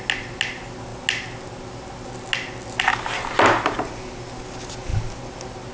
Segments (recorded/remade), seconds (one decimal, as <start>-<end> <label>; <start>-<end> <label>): 0.0-5.7 recorded